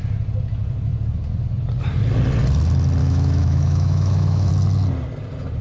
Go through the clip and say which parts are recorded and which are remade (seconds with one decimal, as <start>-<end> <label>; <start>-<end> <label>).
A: 0.0-3.0 recorded; 3.0-4.5 remade; 4.5-5.6 recorded